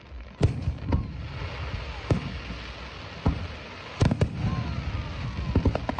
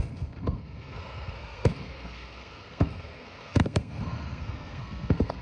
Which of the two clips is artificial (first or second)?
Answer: second